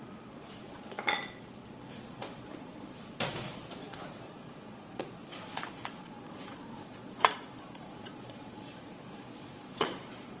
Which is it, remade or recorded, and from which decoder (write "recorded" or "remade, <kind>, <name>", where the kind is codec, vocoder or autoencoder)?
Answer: remade, vocoder, Vocos